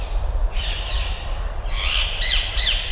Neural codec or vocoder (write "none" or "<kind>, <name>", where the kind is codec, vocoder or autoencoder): vocoder, BigVGAN v2